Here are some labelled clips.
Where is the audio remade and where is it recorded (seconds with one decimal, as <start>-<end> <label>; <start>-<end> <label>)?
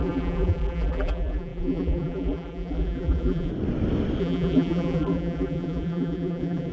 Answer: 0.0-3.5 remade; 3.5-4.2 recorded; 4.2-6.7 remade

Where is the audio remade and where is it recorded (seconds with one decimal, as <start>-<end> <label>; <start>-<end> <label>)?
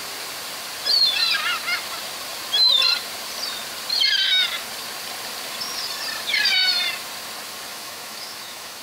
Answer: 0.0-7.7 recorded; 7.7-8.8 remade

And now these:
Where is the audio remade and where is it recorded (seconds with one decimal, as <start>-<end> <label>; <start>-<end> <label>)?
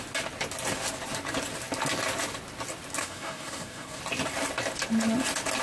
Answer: 0.0-3.0 recorded; 3.0-4.0 remade; 4.0-5.6 recorded